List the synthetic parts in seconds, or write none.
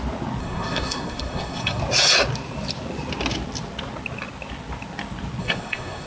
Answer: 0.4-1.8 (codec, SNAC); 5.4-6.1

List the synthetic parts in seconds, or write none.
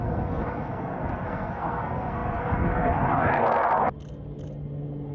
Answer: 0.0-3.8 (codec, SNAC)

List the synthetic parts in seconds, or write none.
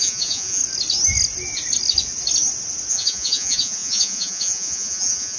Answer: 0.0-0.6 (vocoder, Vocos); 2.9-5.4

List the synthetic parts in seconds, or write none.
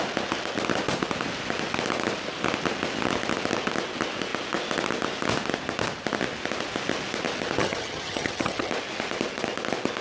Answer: 7.6-8.7 (vocoder, HiFi-GAN)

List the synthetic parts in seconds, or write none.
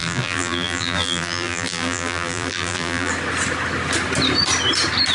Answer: 0.0-3.1 (vocoder, BigVGAN v2)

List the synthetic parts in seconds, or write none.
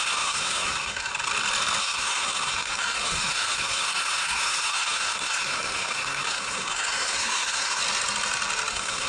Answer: 0.0-1.1 (codec, SNAC); 1.8-7.8; 8.7-9.1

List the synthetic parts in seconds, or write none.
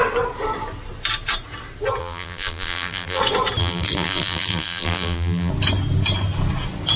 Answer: 2.0-3.2 (vocoder, BigVGAN v2); 3.6-5.5